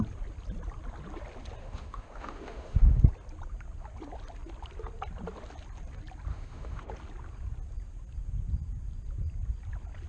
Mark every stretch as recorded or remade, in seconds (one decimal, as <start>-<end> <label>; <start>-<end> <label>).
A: 0.0-1.6 recorded; 1.6-3.0 remade; 3.0-6.3 recorded; 6.3-6.9 remade; 6.9-10.1 recorded